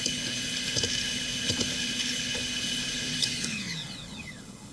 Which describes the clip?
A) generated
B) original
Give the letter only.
A